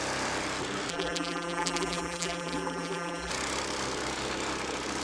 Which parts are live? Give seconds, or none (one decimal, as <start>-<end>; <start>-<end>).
0.0-0.9; 3.3-5.0